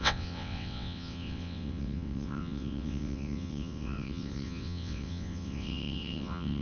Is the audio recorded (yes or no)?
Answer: no